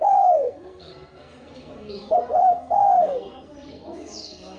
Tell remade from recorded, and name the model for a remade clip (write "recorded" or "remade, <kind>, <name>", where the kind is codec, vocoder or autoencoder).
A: remade, codec, SNAC